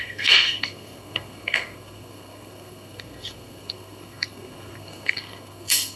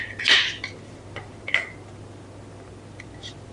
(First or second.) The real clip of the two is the second